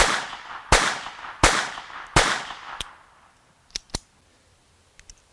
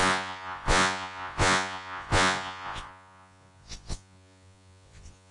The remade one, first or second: second